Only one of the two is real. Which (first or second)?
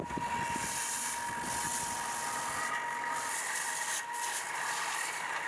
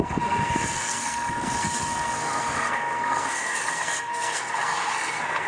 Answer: first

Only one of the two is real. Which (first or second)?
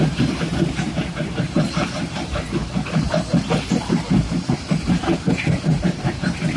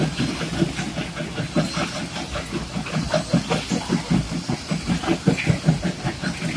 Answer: second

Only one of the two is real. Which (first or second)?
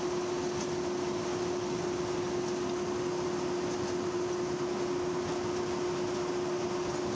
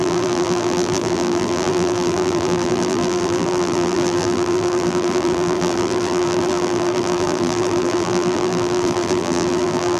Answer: first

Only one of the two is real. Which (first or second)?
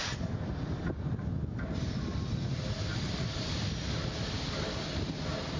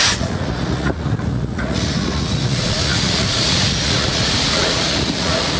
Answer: first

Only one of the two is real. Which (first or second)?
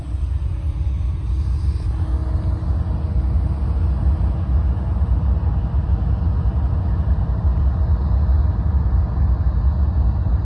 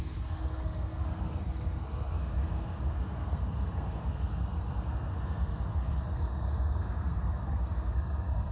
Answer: first